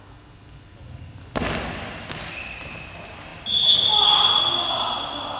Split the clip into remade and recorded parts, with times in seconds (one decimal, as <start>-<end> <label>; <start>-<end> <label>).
0.0-5.4 recorded